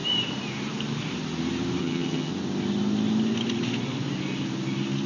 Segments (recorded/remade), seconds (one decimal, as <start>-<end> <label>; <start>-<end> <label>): 0.0-1.8 recorded; 1.8-2.3 remade; 2.3-5.1 recorded